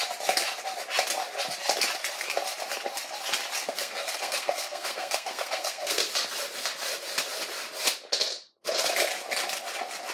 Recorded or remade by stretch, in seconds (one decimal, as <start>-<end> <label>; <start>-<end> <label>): 0.0-3.6 recorded; 3.6-6.1 remade; 6.1-10.1 recorded